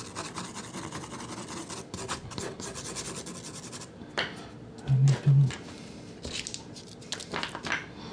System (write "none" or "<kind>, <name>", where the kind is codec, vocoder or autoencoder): none